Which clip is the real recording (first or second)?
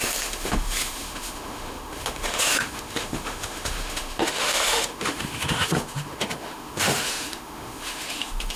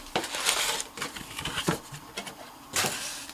second